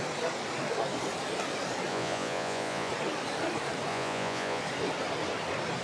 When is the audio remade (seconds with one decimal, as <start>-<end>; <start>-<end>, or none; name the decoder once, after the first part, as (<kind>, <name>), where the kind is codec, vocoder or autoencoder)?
1.9-2.9 (vocoder, Vocos); 3.9-4.6